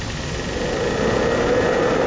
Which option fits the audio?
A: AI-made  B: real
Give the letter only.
B